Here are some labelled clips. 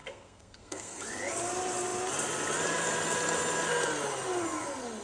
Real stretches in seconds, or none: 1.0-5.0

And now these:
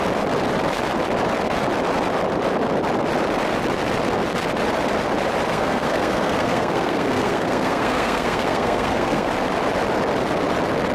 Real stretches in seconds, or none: 0.0-5.5; 9.3-10.9

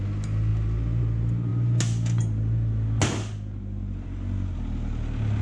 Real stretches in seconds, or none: 0.0-5.4